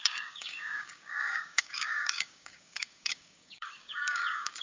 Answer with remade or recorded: remade